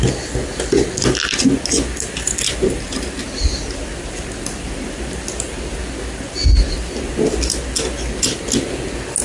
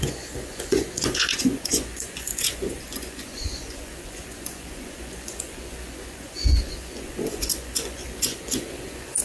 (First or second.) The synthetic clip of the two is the second